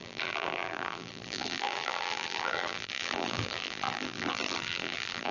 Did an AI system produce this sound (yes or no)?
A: yes